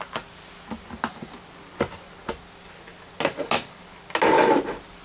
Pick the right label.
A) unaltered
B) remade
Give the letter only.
A